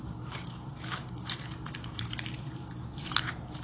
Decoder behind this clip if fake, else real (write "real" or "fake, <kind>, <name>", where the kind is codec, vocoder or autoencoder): fake, vocoder, BigVGAN v2